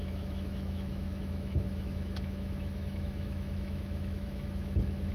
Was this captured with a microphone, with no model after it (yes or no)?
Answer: no